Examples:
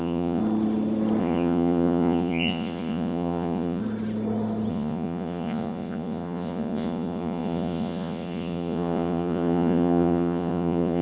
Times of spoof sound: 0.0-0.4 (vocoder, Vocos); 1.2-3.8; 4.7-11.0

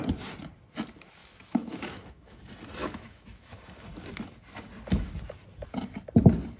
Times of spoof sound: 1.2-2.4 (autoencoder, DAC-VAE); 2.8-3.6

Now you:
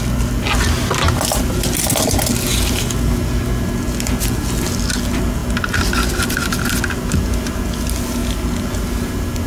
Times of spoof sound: none

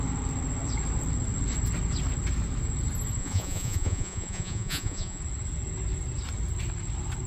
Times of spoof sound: 3.2-5.2 (vocoder, Vocos)

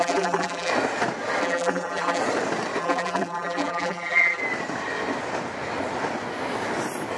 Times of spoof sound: 0.0-0.7 (vocoder, BigVGAN v2); 1.4-2.2; 2.8-4.4

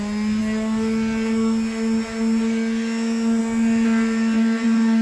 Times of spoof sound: none